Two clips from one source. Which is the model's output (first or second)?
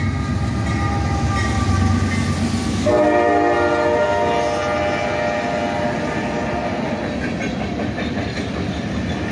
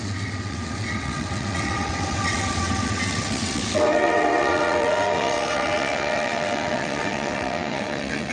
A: second